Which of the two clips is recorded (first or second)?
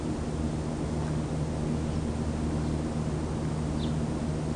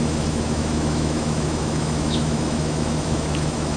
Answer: first